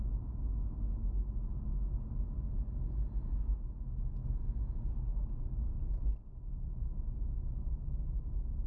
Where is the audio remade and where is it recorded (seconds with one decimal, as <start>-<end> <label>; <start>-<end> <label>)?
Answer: 0.0-8.7 recorded